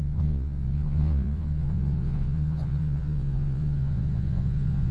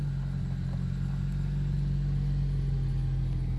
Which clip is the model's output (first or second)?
first